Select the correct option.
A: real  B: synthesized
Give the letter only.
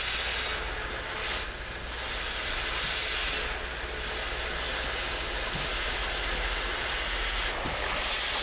A